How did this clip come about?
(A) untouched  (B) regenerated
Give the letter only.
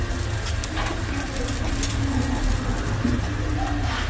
A